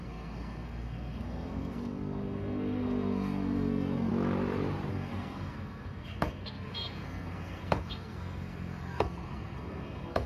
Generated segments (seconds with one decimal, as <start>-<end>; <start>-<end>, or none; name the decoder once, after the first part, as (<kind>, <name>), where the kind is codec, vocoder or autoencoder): 0.0-4.1 (codec, SNAC); 4.9-10.3